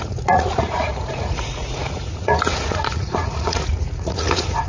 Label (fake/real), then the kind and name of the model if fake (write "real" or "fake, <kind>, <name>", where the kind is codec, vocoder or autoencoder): fake, vocoder, Vocos